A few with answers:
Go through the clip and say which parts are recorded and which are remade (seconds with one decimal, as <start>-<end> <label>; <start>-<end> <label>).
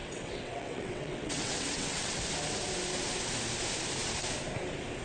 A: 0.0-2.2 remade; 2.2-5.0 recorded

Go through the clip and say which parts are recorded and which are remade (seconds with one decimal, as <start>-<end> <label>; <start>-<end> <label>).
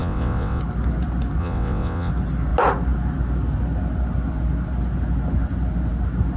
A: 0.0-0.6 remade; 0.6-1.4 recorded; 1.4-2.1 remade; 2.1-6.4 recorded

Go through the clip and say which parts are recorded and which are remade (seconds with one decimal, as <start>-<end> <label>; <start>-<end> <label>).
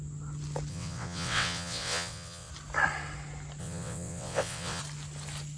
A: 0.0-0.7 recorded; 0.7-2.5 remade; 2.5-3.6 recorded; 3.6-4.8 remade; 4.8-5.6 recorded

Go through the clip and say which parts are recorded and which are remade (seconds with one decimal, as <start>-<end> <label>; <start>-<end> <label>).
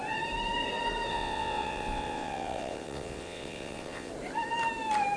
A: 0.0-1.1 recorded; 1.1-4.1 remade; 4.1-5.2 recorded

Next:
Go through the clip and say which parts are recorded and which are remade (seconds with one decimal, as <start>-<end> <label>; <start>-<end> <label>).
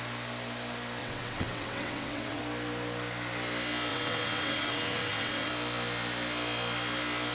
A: 0.0-1.0 recorded; 1.0-2.4 remade; 2.4-3.9 recorded; 3.9-5.5 remade; 5.5-7.3 recorded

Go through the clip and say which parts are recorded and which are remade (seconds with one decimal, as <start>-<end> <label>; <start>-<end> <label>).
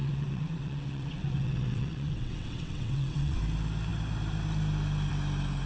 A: 0.0-3.4 remade; 3.4-5.7 recorded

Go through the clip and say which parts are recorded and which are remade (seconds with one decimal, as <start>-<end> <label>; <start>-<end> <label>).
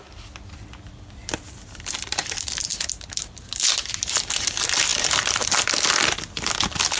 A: 0.0-7.0 recorded